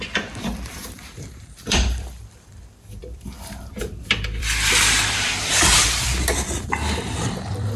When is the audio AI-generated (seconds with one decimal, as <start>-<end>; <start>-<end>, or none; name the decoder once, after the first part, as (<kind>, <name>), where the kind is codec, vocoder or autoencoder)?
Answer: 0.0-7.8 (vocoder, BigVGAN v2)